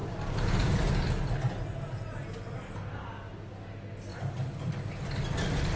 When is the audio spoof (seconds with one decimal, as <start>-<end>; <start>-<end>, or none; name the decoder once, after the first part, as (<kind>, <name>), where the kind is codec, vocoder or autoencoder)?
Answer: 4.1-4.7 (vocoder, BigVGAN v2)